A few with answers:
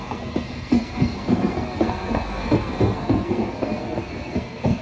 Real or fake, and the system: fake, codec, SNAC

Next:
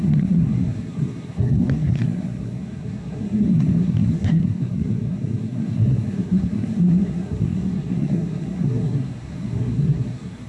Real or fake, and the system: fake, codec, SNAC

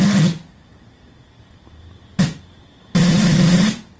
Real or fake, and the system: real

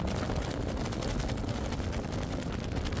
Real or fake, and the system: real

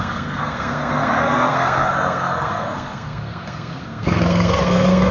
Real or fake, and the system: fake, codec, SNAC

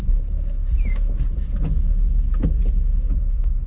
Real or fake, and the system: real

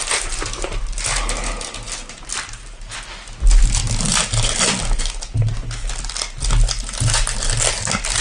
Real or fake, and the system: real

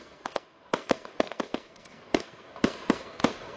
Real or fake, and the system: fake, codec, SNAC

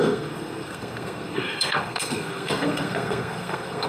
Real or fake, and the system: fake, codec, SNAC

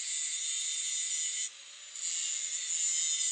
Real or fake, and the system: real